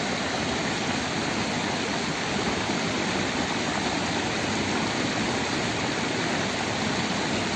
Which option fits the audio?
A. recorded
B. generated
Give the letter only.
A